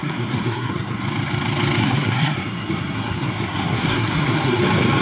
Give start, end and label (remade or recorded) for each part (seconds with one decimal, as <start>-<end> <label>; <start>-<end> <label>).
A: 0.0-1.0 remade; 1.0-1.8 recorded; 1.8-4.6 remade; 4.6-5.0 recorded